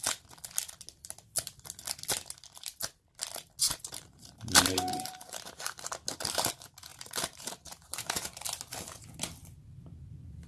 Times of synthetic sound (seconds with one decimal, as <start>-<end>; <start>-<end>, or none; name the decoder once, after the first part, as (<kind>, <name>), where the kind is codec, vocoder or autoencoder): 3.6-5.9 (vocoder, BigVGAN v2); 6.9-8.6